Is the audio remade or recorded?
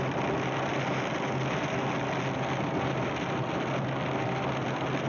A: recorded